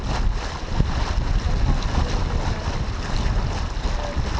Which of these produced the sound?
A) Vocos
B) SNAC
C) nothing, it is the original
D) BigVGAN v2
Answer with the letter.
C